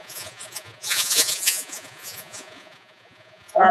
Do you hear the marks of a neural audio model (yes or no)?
yes